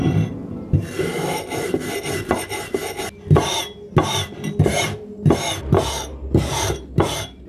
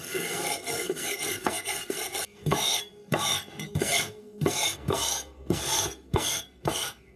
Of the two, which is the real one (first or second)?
first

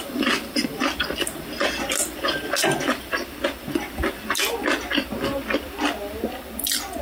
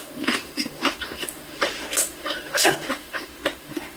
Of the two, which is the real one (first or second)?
first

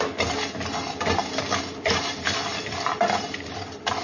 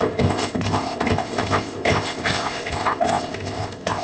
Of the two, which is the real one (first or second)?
first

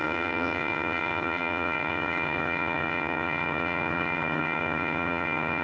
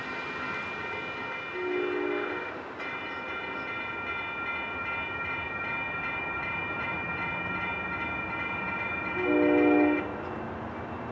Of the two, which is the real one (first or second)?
second